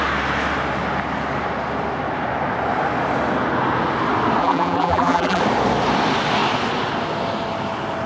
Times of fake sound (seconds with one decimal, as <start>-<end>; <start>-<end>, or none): 4.4-5.4